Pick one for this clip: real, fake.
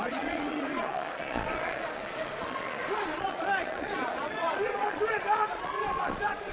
fake